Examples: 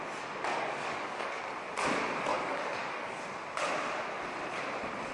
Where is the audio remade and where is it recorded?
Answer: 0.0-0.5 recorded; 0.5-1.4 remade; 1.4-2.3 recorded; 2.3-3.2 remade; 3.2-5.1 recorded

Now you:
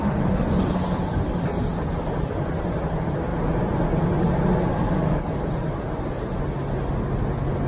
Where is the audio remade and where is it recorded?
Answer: 0.0-4.7 recorded; 4.7-5.5 remade; 5.5-7.7 recorded

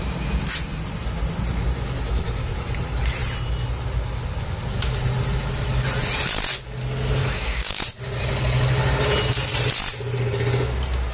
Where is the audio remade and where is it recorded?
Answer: 0.0-7.2 recorded; 7.2-7.8 remade; 7.8-11.1 recorded

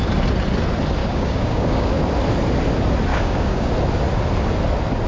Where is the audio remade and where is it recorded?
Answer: 0.0-1.0 recorded; 1.0-1.9 remade; 1.9-3.1 recorded; 3.1-3.7 remade; 3.7-5.1 recorded

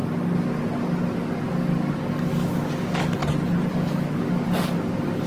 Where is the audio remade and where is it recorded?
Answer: 0.0-1.5 recorded; 1.5-3.2 remade; 3.2-3.7 recorded; 3.7-5.3 remade

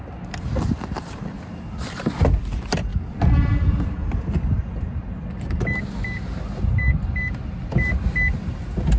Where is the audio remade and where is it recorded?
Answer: 0.0-9.0 recorded

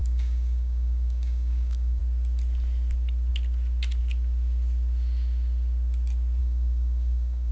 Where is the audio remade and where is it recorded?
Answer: 0.0-2.0 remade; 2.0-6.4 recorded; 6.4-7.5 remade

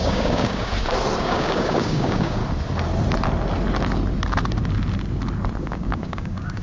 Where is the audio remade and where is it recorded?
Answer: 0.0-0.7 remade; 0.7-1.2 recorded; 1.2-2.4 remade; 2.4-5.6 recorded; 5.6-6.6 remade